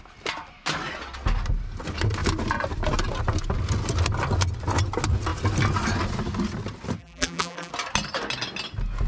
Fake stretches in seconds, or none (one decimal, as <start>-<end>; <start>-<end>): 7.0-7.7